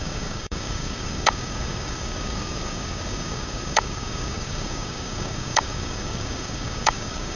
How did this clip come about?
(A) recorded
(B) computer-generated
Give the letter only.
B